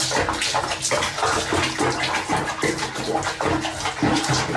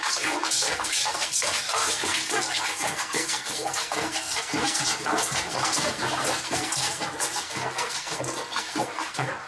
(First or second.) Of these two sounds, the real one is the first